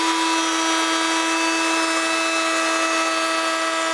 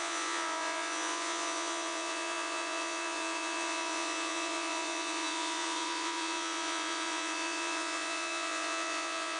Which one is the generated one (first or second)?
second